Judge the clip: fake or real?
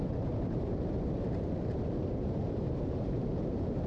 fake